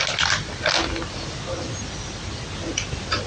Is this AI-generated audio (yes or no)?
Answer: no